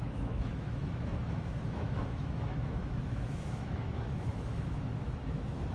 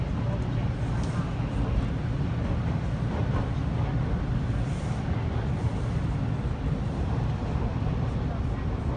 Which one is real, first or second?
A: second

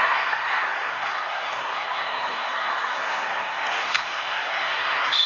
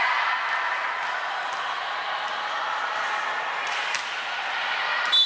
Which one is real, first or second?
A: second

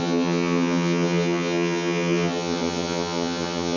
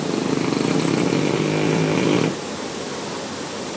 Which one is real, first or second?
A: second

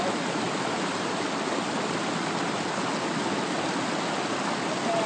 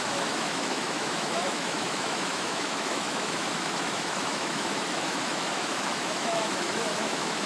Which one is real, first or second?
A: first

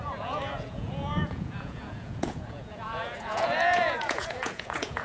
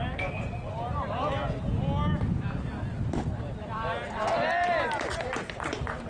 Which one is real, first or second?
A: second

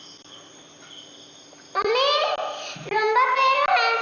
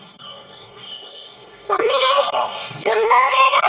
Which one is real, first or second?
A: first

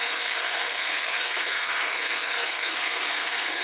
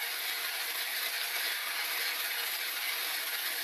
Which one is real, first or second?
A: second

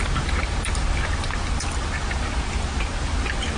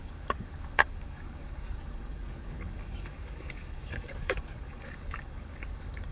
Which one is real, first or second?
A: first